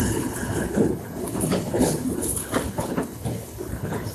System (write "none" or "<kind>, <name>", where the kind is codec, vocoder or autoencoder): codec, HILCodec